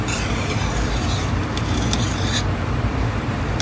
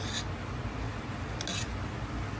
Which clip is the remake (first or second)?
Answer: first